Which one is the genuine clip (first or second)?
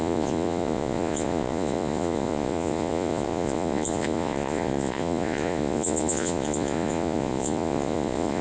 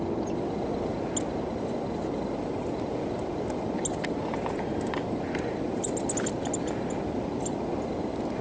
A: second